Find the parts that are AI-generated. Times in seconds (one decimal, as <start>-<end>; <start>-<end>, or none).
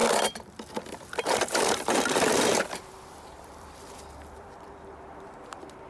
0.0-5.9